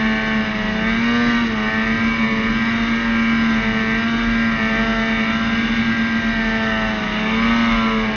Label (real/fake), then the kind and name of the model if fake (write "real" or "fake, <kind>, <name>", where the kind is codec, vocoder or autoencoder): real